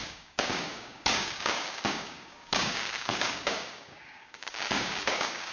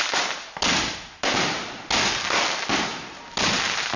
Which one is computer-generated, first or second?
first